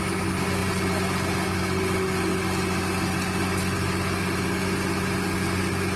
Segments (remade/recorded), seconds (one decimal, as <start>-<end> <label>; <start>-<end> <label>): 0.0-6.0 recorded

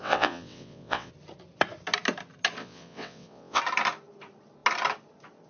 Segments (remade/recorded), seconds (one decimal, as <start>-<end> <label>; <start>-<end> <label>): 0.0-1.1 remade; 1.1-2.6 recorded; 2.6-3.6 remade; 3.6-5.5 recorded

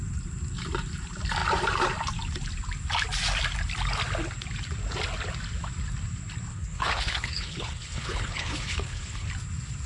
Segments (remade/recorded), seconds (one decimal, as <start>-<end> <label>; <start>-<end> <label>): 0.0-6.5 recorded; 6.5-9.3 remade; 9.3-9.9 recorded

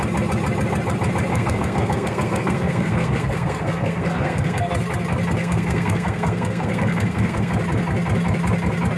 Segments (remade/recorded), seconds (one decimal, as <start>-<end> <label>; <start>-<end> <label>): 0.0-1.3 recorded; 1.3-4.7 remade; 4.7-5.4 recorded; 5.4-7.5 remade; 7.5-9.0 recorded

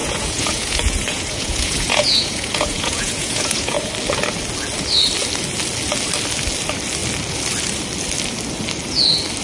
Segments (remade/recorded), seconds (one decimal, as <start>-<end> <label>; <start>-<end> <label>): 0.0-3.9 remade; 3.9-9.4 recorded